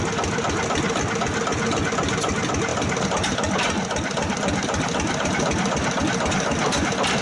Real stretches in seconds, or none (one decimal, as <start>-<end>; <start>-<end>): 0.0-2.7; 6.0-7.2